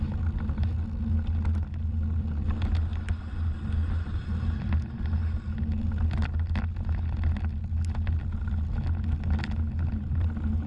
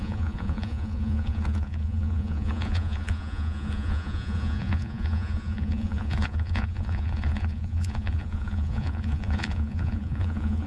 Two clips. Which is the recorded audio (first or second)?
first